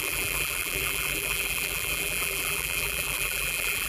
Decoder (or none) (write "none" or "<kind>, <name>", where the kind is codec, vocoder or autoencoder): vocoder, BigVGAN v2